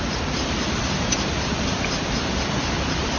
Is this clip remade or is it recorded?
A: recorded